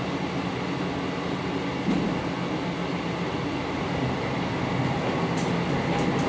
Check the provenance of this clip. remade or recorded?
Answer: recorded